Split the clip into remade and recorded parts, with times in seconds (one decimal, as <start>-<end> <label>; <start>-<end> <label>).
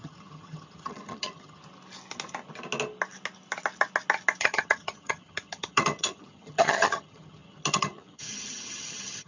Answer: 0.0-1.6 remade; 1.6-4.4 recorded; 4.4-9.3 remade